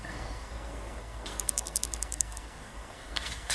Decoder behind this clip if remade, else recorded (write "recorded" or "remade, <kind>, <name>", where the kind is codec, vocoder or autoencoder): remade, codec, SNAC